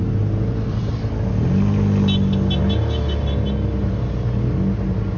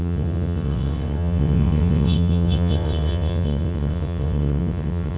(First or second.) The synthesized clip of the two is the second